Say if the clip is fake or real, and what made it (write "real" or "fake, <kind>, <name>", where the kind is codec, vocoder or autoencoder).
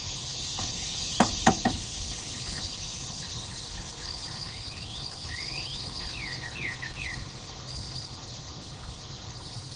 fake, codec, HILCodec